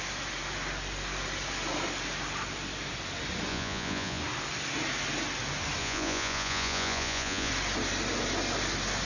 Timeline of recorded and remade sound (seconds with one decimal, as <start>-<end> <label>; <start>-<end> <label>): 0.0-3.5 recorded; 3.5-4.2 remade; 4.2-5.8 recorded; 5.8-7.5 remade; 7.5-9.0 recorded